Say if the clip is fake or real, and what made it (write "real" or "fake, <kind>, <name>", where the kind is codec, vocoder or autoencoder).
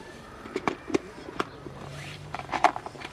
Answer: fake, vocoder, BigVGAN v2